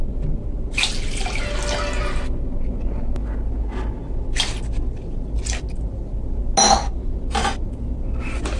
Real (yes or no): yes